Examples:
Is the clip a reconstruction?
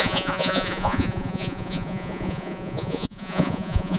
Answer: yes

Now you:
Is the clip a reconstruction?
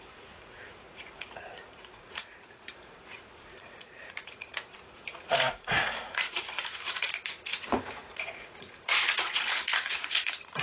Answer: yes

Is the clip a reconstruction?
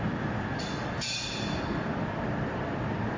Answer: no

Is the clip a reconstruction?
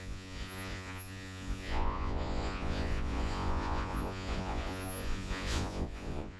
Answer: yes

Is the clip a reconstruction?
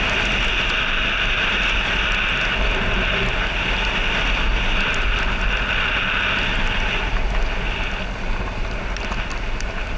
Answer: no